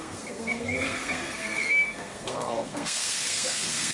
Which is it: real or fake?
fake